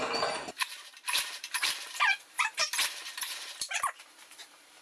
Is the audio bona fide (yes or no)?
no